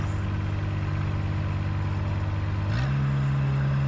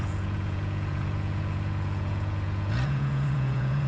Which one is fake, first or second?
second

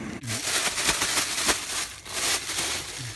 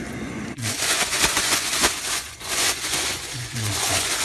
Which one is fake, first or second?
second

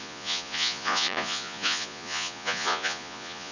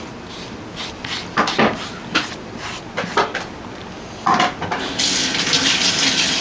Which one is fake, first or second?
first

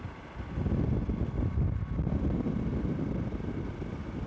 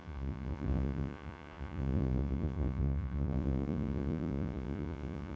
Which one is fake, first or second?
second